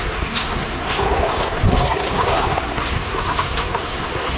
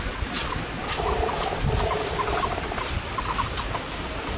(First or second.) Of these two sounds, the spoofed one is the first